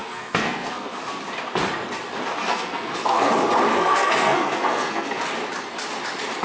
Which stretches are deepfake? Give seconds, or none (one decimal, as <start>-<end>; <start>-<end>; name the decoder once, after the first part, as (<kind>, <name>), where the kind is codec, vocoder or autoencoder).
0.0-1.0 (codec, SNAC); 2.4-3.3; 3.7-5.2